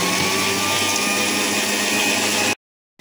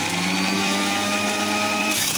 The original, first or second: first